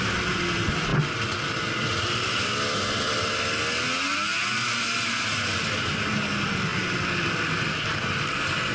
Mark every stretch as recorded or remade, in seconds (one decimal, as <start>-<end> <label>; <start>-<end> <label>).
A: 0.0-8.7 recorded